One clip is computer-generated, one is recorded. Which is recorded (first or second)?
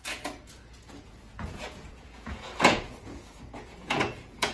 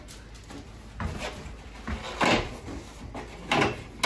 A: second